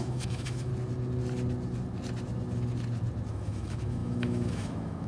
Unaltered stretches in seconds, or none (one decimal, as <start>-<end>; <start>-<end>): 0.7-3.3